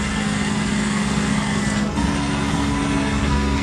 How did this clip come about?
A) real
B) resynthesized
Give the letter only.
B